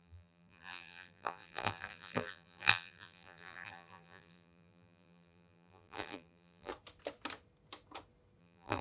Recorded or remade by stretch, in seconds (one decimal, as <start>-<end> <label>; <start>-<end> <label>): 0.0-6.7 remade; 6.7-8.4 recorded; 8.4-8.8 remade